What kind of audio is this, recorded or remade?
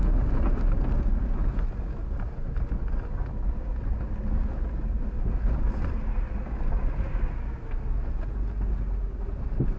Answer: recorded